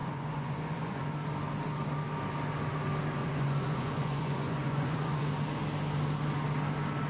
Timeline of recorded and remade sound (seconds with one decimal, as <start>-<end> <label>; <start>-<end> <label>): 0.0-1.0 remade; 1.0-3.2 recorded; 3.2-5.2 remade; 5.2-7.1 recorded